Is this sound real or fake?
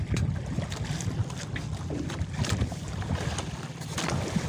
real